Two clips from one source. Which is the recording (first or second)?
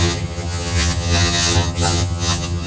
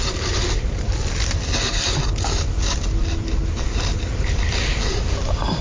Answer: second